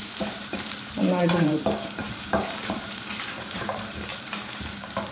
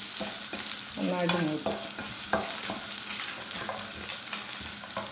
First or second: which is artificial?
first